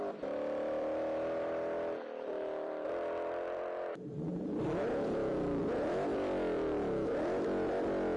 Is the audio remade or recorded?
remade